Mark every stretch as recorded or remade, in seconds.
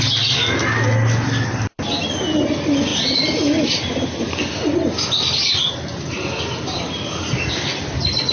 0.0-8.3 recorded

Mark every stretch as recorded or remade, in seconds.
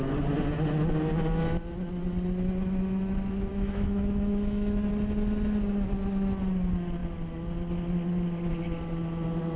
0.0-3.5 recorded; 3.5-4.9 remade; 4.9-9.6 recorded